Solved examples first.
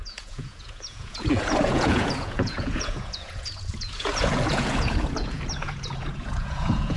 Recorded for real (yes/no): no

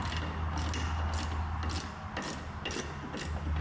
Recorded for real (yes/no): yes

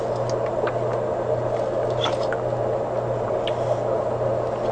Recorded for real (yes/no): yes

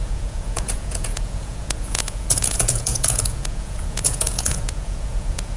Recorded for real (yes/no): no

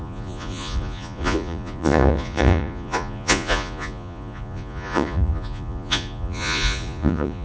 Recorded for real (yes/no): no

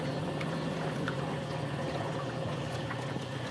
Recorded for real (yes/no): no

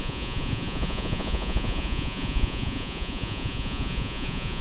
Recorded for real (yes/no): no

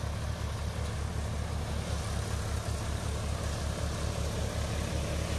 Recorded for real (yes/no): yes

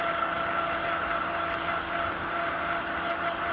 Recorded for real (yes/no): yes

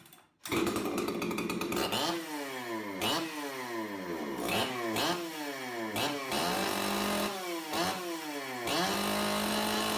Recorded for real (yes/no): yes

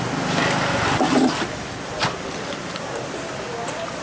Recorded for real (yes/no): yes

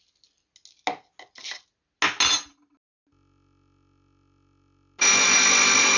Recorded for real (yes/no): yes